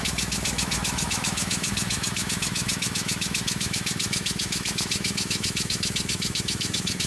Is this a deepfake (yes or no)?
yes